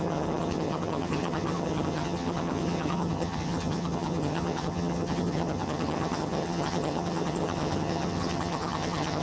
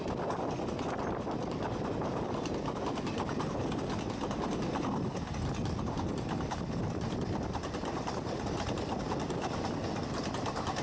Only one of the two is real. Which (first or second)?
second